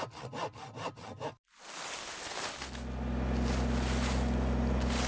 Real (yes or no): yes